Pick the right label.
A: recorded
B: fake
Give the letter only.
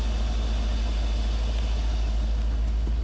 A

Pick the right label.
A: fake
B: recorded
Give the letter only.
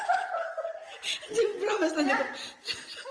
B